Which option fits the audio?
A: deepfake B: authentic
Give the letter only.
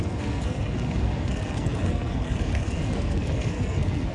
A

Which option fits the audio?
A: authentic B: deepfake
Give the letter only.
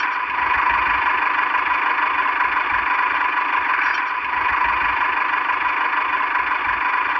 A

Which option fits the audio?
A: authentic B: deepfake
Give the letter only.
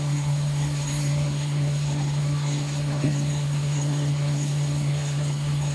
B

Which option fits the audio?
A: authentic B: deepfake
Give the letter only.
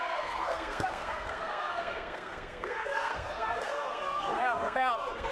B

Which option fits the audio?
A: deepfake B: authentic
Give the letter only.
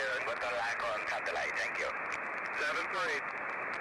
B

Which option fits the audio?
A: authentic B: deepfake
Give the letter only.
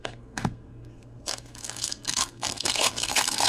B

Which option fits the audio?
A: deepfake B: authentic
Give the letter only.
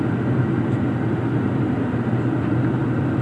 B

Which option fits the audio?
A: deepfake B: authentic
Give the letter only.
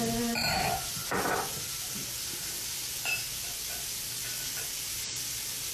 B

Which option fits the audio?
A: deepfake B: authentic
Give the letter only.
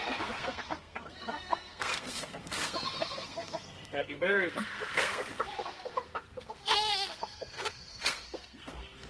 A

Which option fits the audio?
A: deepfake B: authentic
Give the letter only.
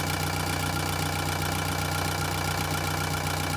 B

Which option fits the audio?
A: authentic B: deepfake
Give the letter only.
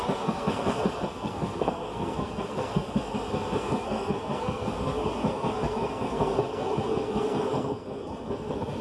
B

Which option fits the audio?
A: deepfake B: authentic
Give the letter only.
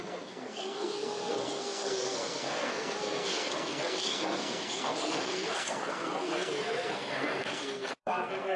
A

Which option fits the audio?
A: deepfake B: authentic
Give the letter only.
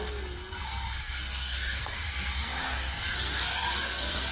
A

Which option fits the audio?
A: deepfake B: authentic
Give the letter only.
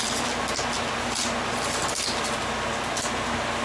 B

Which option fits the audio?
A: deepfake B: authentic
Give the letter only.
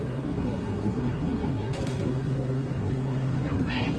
A